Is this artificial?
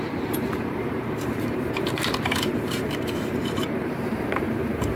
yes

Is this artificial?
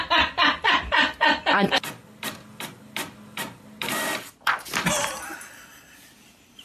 yes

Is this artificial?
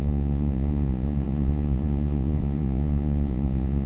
yes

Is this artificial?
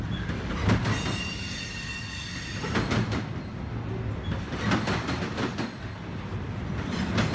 no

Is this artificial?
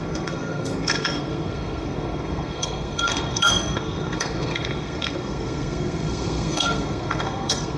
yes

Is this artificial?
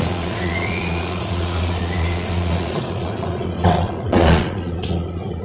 yes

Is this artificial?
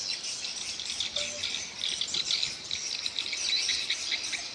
no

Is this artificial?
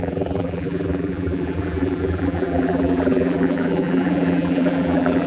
yes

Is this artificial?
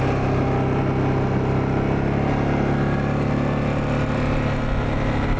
no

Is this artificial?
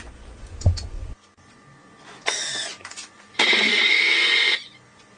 yes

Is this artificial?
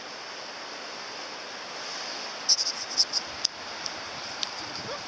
no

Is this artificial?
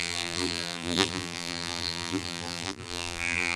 yes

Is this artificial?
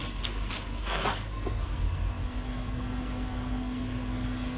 yes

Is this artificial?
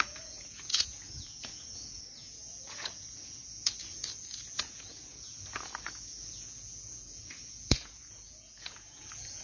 yes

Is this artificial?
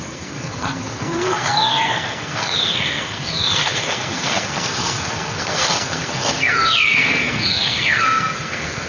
yes